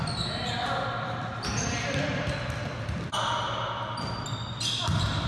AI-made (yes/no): no